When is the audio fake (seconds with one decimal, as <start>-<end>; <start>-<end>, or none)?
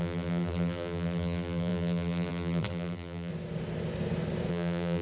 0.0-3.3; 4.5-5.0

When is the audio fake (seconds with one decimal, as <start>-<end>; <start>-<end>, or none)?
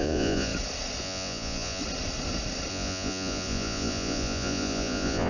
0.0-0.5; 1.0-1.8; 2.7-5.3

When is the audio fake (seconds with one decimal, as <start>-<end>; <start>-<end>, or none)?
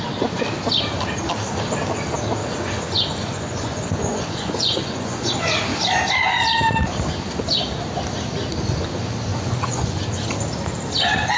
2.4-5.3; 9.3-10.0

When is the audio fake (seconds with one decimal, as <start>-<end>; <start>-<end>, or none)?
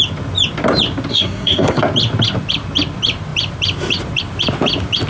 1.1-1.8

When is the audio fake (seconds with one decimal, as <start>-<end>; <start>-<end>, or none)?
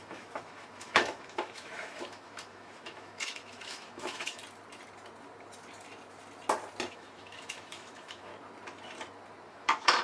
0.0-4.4; 6.9-8.3; 9.5-10.0